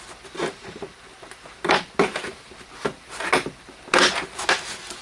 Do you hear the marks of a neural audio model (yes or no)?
no